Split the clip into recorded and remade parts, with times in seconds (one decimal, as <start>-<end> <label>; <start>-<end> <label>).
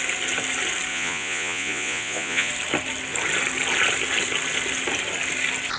0.0-0.9 recorded; 0.9-2.5 remade; 2.5-5.8 recorded